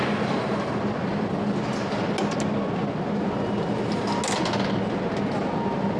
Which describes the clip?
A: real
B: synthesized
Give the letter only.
A